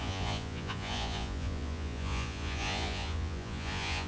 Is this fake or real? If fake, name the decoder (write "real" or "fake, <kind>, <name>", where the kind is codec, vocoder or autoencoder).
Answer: fake, vocoder, Vocos